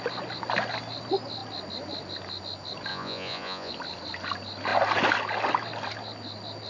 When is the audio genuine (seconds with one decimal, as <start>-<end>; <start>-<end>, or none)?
0.0-2.9; 3.7-6.7